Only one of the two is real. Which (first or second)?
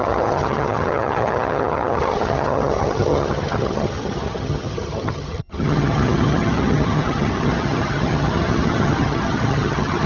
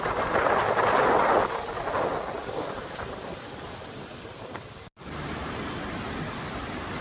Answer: second